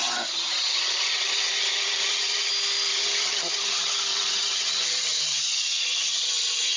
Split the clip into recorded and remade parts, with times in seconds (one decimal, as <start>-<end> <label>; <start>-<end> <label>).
0.0-2.5 remade; 2.5-2.9 recorded; 2.9-6.8 remade